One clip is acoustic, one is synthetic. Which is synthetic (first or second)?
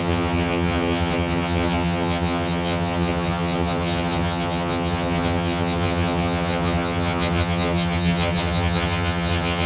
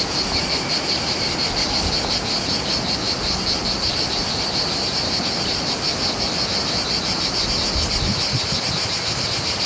first